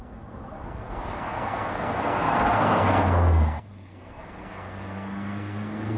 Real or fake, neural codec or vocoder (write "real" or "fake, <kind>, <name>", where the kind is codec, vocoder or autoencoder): fake, codec, SNAC